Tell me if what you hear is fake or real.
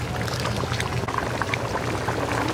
real